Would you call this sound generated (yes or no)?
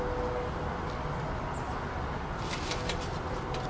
no